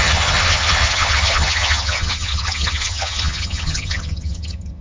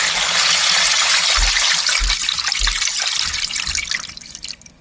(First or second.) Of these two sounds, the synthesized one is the first